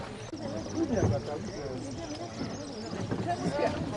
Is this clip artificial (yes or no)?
no